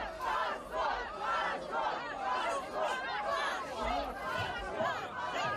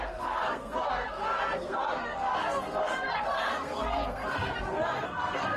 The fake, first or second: second